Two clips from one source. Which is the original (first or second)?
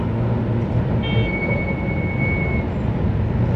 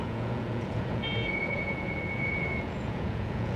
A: first